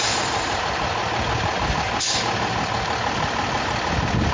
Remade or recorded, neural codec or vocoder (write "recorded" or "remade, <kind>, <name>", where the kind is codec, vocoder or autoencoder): recorded